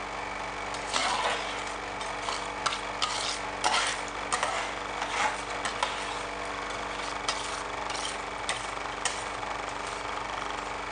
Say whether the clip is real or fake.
real